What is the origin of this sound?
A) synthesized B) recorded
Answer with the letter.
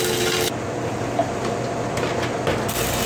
B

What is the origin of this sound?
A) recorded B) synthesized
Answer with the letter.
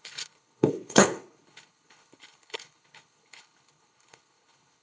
B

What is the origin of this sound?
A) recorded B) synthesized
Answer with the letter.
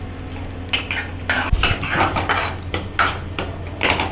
A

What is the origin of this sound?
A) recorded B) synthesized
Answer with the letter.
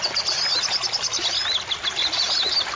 A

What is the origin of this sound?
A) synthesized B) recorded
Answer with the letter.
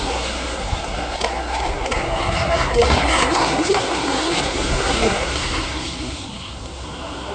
A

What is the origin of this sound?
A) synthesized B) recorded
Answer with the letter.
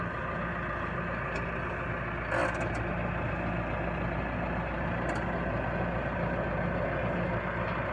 B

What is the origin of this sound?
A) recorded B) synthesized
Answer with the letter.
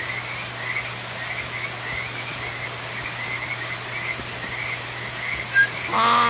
A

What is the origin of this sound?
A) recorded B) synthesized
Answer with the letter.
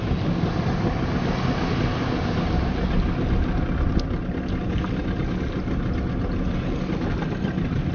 A